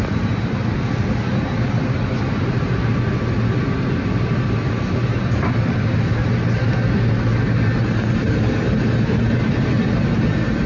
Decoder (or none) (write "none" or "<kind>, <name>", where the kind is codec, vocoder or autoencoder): none